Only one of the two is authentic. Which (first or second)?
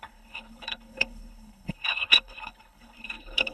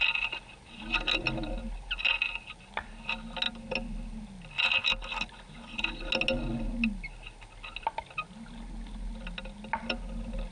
second